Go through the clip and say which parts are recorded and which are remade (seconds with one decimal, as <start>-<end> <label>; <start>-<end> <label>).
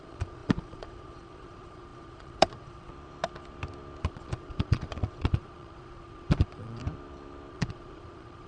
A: 0.0-2.9 remade; 2.9-4.0 recorded; 4.0-6.8 remade; 6.8-7.5 recorded; 7.5-8.5 remade